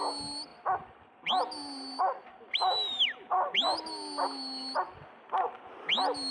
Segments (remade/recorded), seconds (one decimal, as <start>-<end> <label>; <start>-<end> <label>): 0.0-6.3 recorded